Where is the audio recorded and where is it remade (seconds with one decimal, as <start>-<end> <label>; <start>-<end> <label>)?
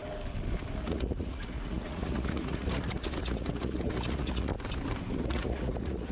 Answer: 0.0-0.8 recorded; 0.8-4.5 remade; 4.5-5.2 recorded; 5.2-6.1 remade